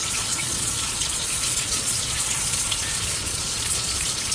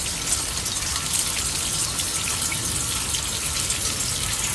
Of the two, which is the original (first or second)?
second